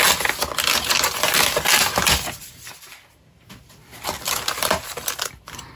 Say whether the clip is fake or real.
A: real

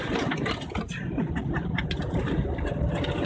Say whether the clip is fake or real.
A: real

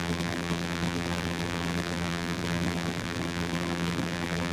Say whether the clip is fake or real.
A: fake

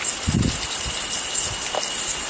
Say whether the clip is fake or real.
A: real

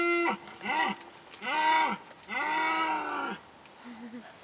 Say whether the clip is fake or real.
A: real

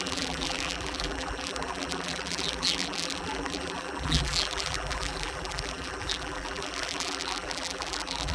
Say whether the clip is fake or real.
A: fake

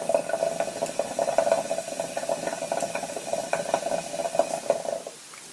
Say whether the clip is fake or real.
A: real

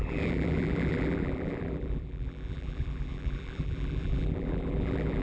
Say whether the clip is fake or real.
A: fake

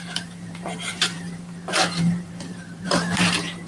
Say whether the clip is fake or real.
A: fake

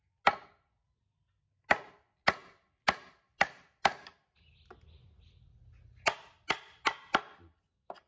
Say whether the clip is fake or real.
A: real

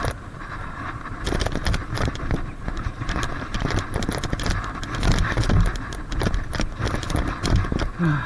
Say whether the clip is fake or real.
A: real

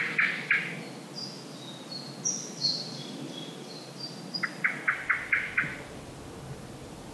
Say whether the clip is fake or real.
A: real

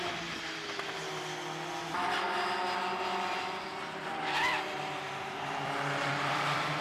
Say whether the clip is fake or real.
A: fake